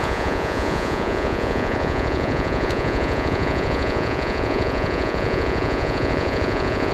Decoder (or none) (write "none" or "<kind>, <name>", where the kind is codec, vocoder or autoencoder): vocoder, Vocos